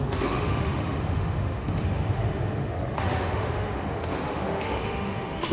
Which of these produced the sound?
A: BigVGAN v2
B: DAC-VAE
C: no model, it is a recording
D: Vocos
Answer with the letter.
B